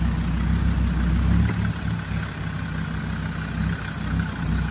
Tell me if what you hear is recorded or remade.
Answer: recorded